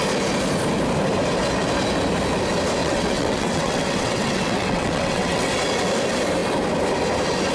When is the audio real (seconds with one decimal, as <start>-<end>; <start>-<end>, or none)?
0.0-2.8; 5.5-7.5